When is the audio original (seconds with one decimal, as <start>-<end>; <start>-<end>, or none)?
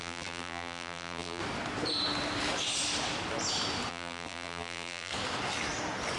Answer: 1.4-3.9; 5.1-6.2